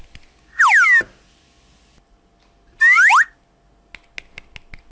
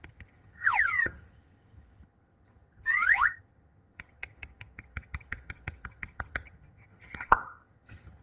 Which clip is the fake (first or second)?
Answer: second